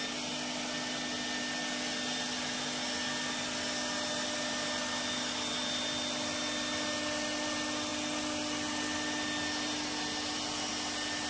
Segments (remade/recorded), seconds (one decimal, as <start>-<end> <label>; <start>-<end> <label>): 0.0-11.3 recorded